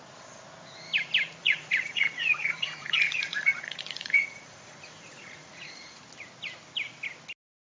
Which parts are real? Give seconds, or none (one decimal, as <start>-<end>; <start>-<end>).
0.0-1.4; 6.0-7.6